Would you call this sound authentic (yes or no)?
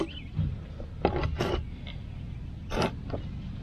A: yes